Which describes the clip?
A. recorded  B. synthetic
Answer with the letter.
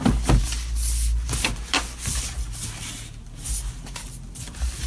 A